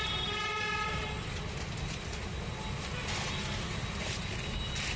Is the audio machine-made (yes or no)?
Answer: no